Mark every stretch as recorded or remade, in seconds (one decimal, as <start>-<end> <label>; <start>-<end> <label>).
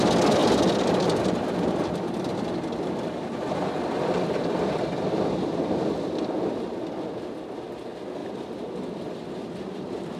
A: 0.0-0.4 recorded; 0.4-4.9 remade; 4.9-8.2 recorded; 8.2-10.2 remade